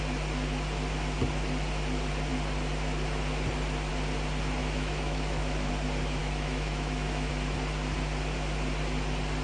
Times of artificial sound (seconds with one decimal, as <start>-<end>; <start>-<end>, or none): 4.6-5.7; 6.2-7.3

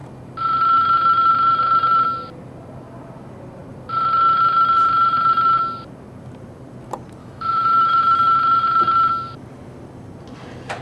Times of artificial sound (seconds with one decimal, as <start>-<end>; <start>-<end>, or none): 7.2-8.0

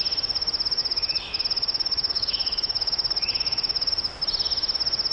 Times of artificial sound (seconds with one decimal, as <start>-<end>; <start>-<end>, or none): 0.8-3.9

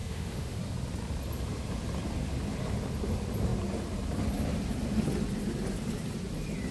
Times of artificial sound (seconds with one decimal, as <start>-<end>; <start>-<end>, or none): 0.0-0.6

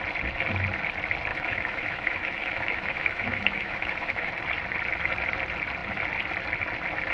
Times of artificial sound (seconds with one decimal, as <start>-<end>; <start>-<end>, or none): 1.3-4.3

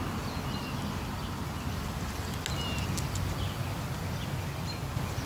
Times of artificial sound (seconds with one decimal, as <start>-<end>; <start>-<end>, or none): none